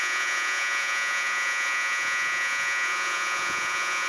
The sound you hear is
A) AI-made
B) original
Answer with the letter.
A